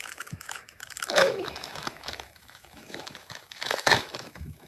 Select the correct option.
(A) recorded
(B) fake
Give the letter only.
B